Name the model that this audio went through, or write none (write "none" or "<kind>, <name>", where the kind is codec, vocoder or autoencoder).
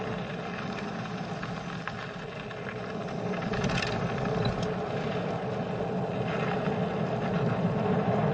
none